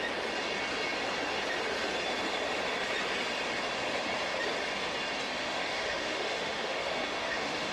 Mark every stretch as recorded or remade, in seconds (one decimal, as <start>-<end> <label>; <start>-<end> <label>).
0.0-5.4 recorded; 5.4-7.7 remade